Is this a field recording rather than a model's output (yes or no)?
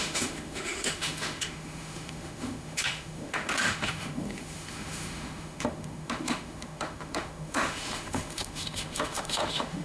no